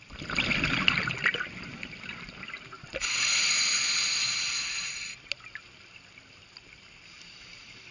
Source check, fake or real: real